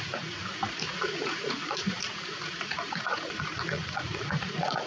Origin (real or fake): fake